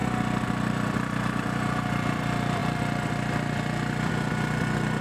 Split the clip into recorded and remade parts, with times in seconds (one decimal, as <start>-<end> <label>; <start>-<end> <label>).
0.0-0.7 recorded; 0.7-5.0 remade